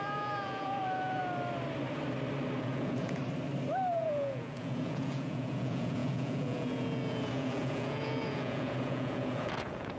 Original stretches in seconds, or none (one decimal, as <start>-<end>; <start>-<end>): 1.2-2.6; 3.2-3.9